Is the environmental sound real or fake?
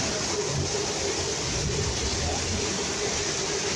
real